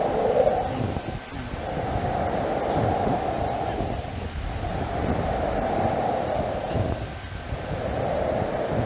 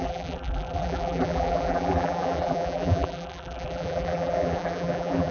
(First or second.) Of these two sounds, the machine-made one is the second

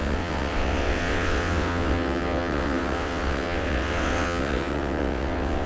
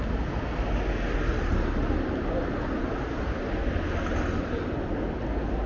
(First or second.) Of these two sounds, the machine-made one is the first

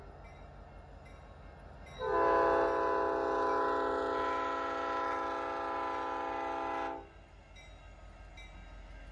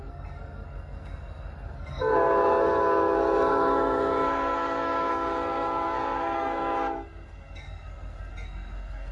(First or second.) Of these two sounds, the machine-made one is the second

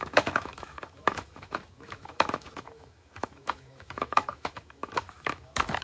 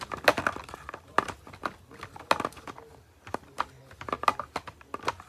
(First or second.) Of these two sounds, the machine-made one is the first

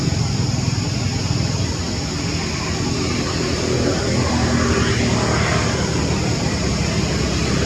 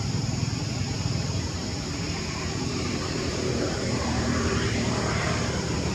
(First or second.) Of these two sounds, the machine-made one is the second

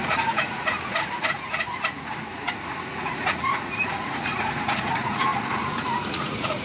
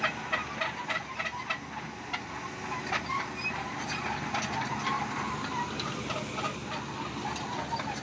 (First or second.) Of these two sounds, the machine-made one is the first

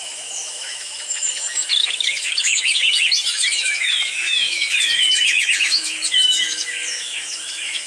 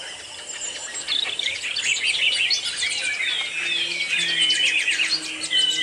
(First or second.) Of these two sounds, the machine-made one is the first